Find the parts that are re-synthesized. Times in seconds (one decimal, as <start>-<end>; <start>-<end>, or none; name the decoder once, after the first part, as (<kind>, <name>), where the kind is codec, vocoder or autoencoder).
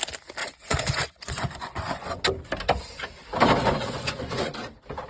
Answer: 0.4-2.2 (vocoder, Vocos); 3.6-4.5